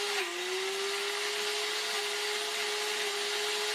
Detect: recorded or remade recorded